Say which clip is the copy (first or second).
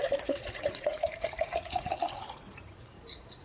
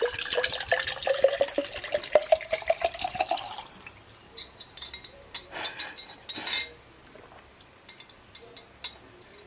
first